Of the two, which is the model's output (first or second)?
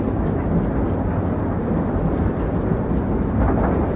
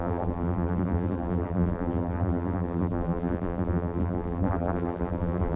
second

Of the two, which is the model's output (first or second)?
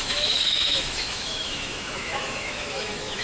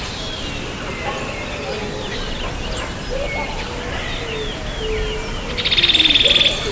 first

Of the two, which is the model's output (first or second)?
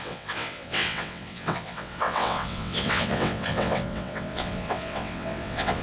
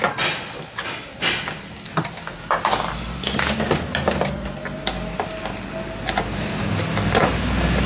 first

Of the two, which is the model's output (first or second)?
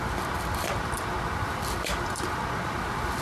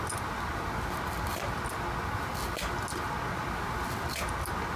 first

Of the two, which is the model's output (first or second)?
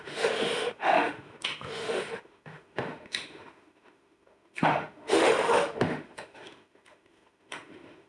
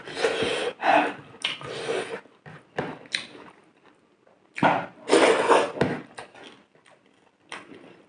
first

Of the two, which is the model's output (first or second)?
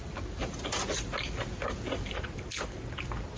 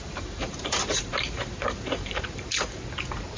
second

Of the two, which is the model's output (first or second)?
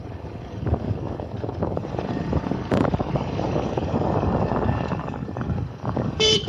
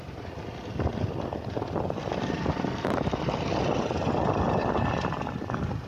first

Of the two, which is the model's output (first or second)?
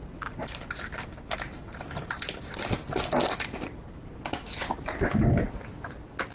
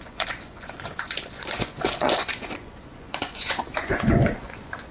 second